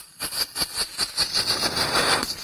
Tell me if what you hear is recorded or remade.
recorded